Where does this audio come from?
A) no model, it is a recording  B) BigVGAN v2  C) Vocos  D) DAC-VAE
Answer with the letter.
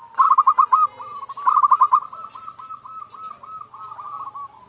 A